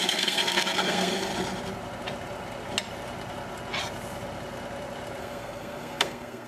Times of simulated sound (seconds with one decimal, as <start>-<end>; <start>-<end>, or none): 0.0-1.3; 5.2-6.5